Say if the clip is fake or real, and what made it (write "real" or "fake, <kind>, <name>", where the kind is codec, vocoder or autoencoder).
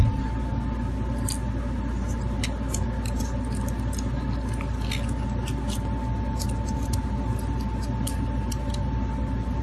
real